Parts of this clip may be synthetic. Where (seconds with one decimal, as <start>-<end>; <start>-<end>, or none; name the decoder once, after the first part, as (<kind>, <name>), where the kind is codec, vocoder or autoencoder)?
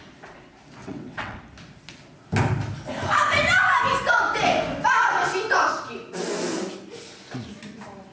0.8-1.4 (vocoder, WaveNeXt)